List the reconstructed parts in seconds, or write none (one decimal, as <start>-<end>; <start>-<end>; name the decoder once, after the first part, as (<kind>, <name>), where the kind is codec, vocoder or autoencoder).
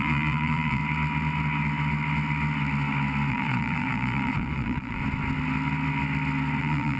0.0-0.8 (vocoder, Vocos); 3.3-5.0; 6.6-7.0